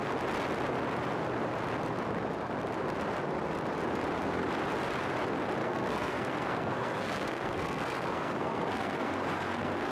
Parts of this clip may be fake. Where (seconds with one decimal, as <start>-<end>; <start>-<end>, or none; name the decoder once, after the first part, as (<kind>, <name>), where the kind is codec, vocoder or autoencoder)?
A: 5.6-9.9 (codec, SNAC)